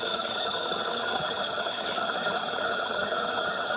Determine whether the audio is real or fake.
fake